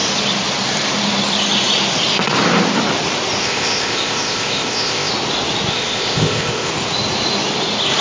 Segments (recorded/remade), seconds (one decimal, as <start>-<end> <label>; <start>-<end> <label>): 0.0-3.4 recorded; 3.4-5.1 remade; 5.1-5.7 recorded; 5.7-6.7 remade; 6.7-8.0 recorded